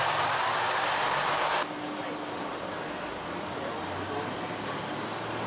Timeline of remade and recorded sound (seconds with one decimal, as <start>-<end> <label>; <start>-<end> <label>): 0.0-5.5 recorded